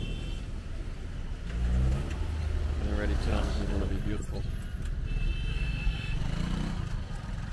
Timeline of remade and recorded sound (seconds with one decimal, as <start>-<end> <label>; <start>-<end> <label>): 0.0-3.3 recorded; 3.3-3.9 remade; 3.9-5.5 recorded; 5.5-6.2 remade; 6.2-7.5 recorded